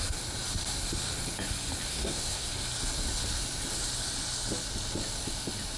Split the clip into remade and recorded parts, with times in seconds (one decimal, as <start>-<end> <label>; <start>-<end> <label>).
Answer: 0.0-1.9 recorded; 1.9-2.5 remade; 2.5-5.8 recorded

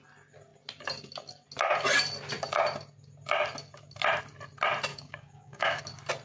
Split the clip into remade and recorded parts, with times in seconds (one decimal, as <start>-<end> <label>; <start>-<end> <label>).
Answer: 0.0-4.9 recorded; 4.9-5.8 remade; 5.8-6.2 recorded